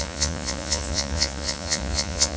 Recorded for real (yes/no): no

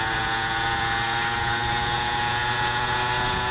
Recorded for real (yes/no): no